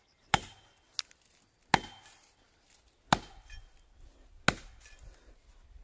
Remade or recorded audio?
recorded